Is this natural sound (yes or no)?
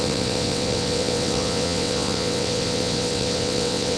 no